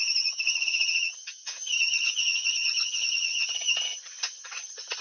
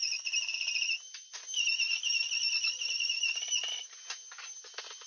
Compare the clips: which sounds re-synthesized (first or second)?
first